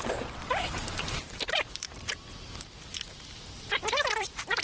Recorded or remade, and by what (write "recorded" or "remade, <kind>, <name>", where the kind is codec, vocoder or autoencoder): remade, vocoder, BigVGAN v2